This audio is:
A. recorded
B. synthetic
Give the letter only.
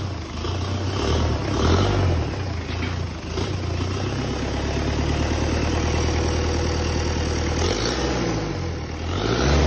A